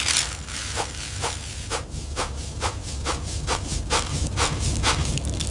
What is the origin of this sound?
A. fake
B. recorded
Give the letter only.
B